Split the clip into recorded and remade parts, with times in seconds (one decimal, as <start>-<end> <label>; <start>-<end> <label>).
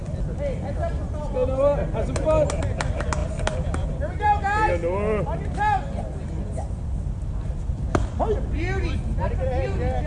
0.0-10.1 recorded